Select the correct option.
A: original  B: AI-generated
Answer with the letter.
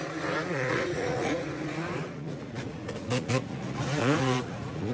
B